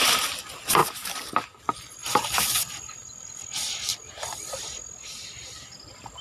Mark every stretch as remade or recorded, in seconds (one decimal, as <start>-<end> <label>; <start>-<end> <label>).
0.0-0.8 recorded; 0.8-1.6 remade; 1.6-2.0 recorded; 2.0-3.1 remade; 3.1-3.9 recorded; 3.9-4.6 remade; 4.6-6.2 recorded